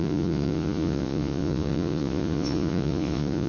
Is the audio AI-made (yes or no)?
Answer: yes